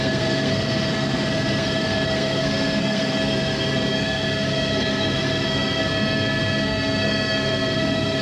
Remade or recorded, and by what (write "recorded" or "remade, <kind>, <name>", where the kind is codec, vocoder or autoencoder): remade, codec, SNAC